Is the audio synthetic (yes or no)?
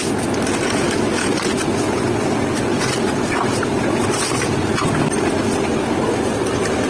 no